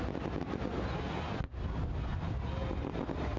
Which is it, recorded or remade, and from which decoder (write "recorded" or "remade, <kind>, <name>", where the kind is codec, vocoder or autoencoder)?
recorded